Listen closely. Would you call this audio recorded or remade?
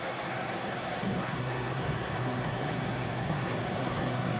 remade